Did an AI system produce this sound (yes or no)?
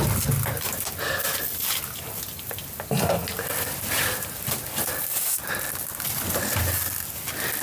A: no